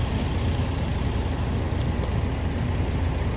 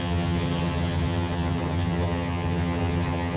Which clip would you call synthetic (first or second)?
second